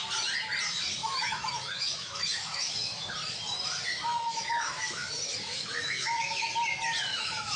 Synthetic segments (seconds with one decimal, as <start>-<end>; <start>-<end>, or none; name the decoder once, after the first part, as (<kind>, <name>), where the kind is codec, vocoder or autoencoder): 1.0-3.1 (autoencoder, DAC-VAE); 4.1-5.1; 5.5-6.5; 7.1-7.6